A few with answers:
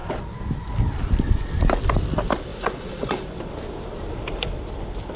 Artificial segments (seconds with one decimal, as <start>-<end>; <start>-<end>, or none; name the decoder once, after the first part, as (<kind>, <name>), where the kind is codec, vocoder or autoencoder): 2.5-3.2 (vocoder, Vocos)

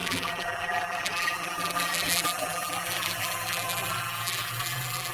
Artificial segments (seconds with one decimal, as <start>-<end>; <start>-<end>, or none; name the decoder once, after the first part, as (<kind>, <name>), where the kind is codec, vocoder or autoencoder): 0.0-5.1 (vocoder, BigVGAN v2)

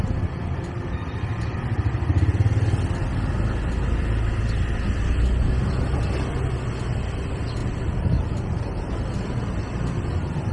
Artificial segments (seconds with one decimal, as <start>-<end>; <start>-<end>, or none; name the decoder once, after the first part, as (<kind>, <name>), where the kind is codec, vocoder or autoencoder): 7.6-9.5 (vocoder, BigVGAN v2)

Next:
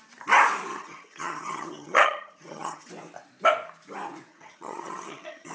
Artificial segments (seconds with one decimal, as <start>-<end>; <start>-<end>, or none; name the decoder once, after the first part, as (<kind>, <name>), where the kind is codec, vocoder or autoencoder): 0.7-2.9 (vocoder, HiFi-GAN); 4.3-5.5